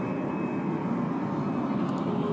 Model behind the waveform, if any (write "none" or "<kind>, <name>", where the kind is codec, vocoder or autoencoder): none